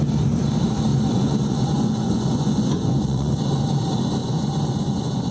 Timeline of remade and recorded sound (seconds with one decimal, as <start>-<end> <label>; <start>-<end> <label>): 0.0-0.9 recorded; 0.9-3.3 remade; 3.3-4.2 recorded; 4.2-5.3 remade